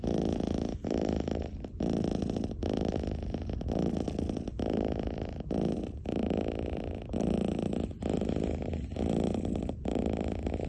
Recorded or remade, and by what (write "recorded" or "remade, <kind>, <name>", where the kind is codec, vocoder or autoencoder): remade, vocoder, BigVGAN v2